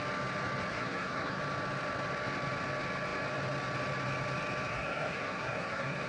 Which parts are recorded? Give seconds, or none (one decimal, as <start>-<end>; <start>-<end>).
0.0-0.7; 1.4-4.7